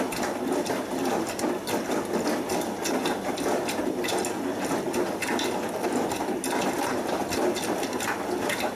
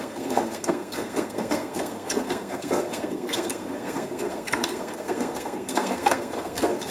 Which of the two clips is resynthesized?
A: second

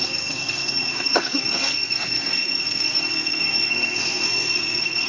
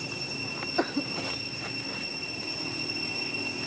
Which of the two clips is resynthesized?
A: first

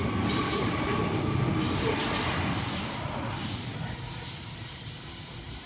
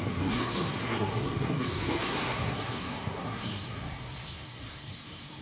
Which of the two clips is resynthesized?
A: second